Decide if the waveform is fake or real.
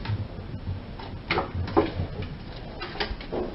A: real